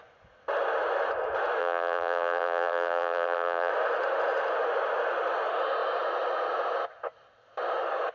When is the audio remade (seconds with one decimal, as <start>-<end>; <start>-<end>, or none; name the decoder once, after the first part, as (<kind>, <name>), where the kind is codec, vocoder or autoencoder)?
1.6-3.7 (vocoder, BigVGAN v2)